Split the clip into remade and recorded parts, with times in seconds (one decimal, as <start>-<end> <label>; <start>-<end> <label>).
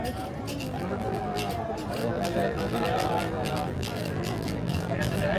0.0-0.6 recorded; 0.6-1.5 remade; 1.5-2.0 recorded; 2.0-5.4 remade